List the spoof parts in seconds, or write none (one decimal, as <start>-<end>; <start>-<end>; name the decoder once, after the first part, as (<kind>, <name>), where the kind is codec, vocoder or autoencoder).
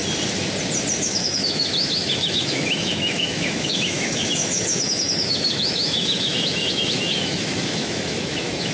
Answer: 1.0-8.7 (autoencoder, DAC-VAE)